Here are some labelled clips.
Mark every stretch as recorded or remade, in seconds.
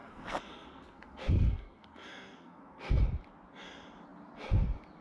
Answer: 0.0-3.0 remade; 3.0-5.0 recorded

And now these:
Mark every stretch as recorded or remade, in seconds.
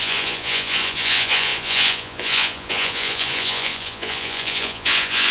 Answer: 0.0-5.3 remade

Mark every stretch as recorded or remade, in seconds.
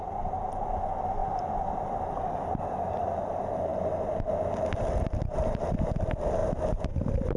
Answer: 0.0-1.2 recorded; 1.2-2.5 remade; 2.5-7.4 recorded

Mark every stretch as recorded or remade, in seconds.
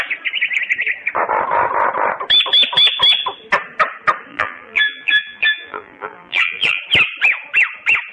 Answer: 0.0-4.3 recorded; 4.3-6.8 remade; 6.8-8.1 recorded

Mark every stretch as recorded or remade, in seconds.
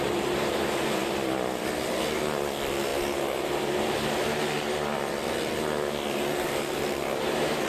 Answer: 0.0-7.7 recorded